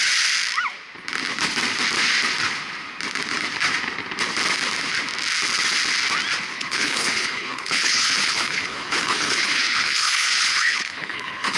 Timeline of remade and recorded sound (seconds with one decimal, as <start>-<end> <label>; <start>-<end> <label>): 0.0-6.5 recorded; 6.5-11.6 remade